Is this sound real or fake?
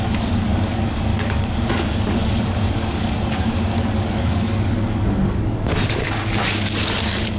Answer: fake